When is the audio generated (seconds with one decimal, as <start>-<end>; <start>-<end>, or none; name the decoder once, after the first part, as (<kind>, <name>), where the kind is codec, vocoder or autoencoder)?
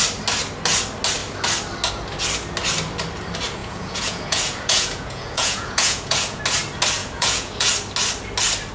3.6-6.4 (vocoder, Vocos); 7.0-7.7